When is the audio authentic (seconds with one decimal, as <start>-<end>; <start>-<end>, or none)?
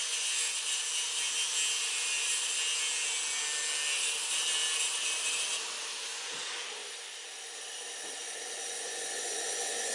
0.6-6.1; 6.6-8.2